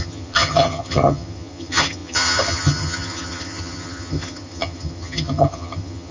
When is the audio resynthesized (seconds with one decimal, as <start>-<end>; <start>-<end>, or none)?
0.0-6.1